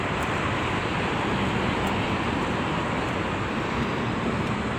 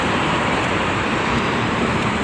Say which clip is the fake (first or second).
second